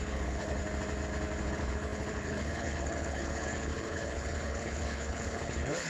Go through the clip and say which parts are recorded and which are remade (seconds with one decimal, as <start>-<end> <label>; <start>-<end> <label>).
0.0-0.6 remade; 0.6-1.4 recorded; 1.4-5.9 remade